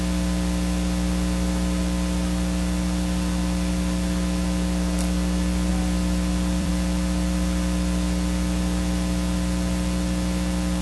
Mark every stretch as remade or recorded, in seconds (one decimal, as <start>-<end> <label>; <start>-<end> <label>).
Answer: 0.0-5.7 recorded; 5.7-6.7 remade; 6.7-10.8 recorded